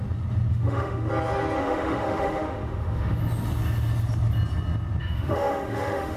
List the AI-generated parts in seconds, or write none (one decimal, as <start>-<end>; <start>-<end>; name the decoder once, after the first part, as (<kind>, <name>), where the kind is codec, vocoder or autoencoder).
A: 0.5-1.1 (autoencoder, DAC-VAE); 1.6-3.2; 5.0-6.2